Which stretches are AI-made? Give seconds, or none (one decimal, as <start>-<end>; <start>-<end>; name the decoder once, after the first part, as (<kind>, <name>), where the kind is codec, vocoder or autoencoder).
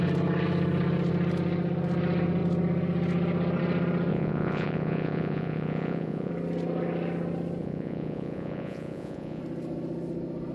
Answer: 4.1-6.3 (vocoder, Vocos); 7.6-9.4